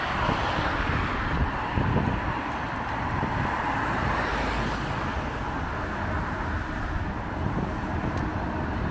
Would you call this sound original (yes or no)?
yes